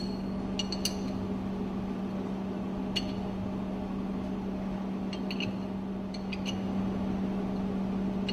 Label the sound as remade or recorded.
recorded